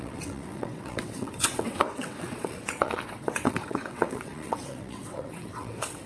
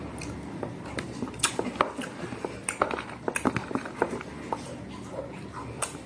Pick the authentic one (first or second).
second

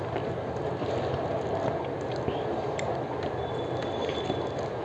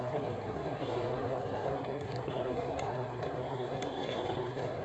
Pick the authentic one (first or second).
first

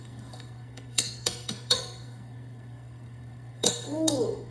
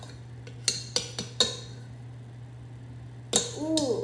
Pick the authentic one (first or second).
second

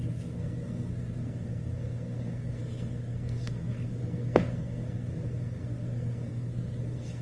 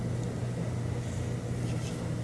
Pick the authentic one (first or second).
second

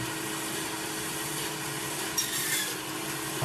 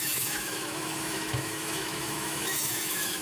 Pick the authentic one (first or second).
first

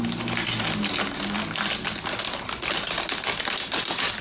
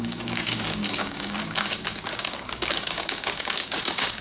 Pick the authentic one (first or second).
first